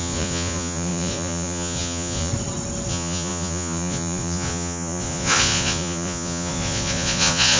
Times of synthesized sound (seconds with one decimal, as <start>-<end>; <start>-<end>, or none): 0.0-2.3; 2.9-7.6